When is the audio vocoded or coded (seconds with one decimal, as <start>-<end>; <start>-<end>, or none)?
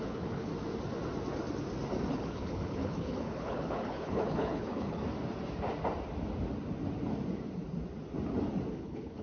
0.0-0.5; 2.1-5.0; 8.7-9.2